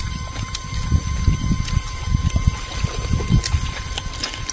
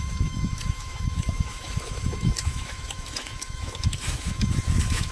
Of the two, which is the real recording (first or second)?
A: first